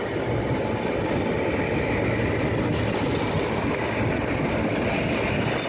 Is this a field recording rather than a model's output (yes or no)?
yes